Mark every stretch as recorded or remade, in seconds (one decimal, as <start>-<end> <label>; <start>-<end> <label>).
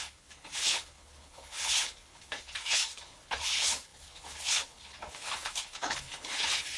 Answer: 0.0-6.8 remade